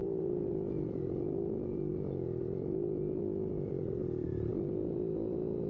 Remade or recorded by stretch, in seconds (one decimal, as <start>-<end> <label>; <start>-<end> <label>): 0.0-0.5 remade; 0.5-4.0 recorded; 4.0-4.5 remade; 4.5-5.7 recorded